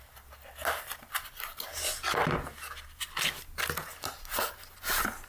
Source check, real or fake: real